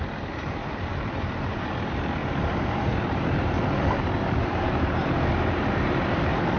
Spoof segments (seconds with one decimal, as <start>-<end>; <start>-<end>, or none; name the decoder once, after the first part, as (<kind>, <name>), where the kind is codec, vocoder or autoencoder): 2.2-6.6 (vocoder, BigVGAN v2)